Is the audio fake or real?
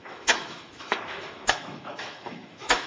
fake